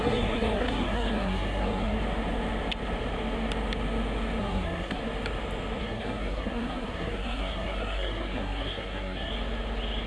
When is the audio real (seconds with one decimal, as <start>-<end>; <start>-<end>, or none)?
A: 2.0-4.4; 5.0-5.8; 9.3-10.1